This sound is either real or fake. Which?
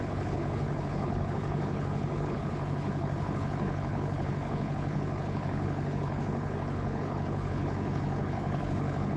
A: fake